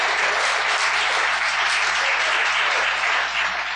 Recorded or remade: recorded